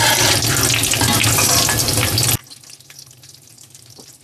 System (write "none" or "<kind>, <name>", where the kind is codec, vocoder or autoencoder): none